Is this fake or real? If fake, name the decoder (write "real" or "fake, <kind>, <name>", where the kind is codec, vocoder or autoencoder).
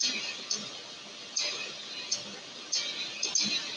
real